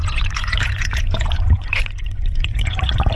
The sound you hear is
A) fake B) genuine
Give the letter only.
A